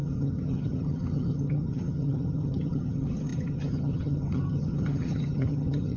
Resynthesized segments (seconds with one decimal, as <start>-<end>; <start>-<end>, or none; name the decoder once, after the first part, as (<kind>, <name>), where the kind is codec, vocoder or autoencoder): 0.0-6.0 (vocoder, HiFi-GAN)